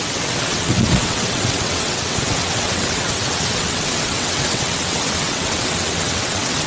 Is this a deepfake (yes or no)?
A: yes